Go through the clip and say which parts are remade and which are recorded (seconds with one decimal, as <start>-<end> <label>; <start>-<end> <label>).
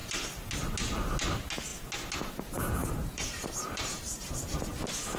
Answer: 0.0-2.8 recorded; 2.8-4.6 remade; 4.6-5.2 recorded